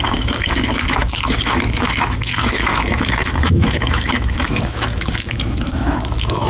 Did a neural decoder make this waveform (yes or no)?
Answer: yes